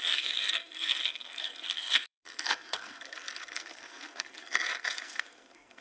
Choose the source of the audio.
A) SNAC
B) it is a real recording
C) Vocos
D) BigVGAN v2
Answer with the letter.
A